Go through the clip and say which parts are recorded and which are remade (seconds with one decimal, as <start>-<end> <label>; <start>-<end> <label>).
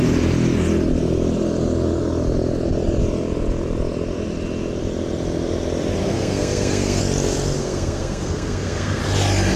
0.0-6.0 recorded; 6.0-7.0 remade; 7.0-7.6 recorded; 7.6-9.0 remade; 9.0-9.6 recorded